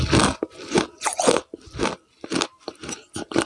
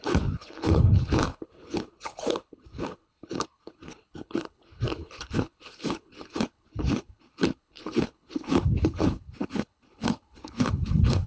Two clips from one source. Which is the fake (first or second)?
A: second